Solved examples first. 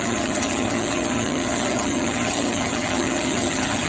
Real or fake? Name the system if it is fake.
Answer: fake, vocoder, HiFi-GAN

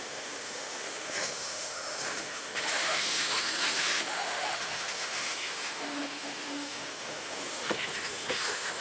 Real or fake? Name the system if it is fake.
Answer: fake, autoencoder, DAC-VAE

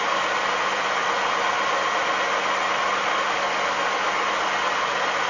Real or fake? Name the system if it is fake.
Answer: real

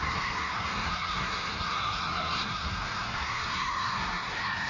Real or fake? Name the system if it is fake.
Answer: fake, codec, SNAC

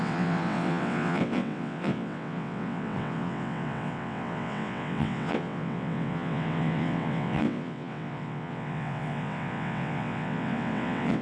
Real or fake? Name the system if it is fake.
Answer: fake, vocoder, WaveNeXt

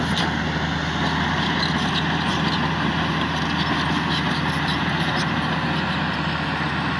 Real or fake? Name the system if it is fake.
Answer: real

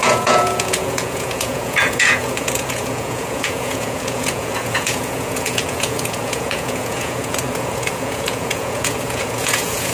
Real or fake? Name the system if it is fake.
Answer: fake, vocoder, Vocos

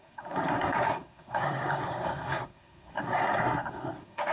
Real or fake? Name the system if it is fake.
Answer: fake, codec, SNAC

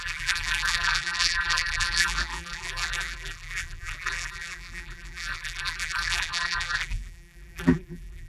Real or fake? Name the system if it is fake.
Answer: fake, vocoder, BigVGAN v2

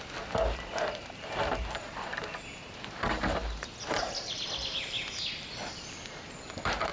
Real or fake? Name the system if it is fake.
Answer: real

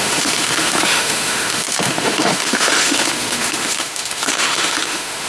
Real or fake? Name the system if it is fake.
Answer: fake, autoencoder, DAC-VAE